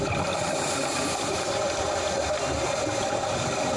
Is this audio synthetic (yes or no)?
no